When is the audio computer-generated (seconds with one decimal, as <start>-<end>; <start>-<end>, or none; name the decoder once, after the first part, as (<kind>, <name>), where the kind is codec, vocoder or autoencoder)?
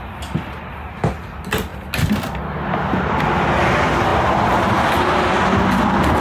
none